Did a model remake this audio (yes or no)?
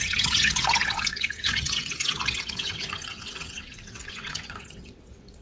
yes